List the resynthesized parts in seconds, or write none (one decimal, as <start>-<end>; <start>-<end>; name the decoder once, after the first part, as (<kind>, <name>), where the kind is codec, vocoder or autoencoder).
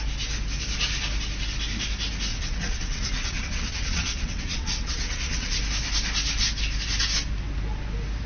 2.3-5.6 (vocoder, WaveNeXt)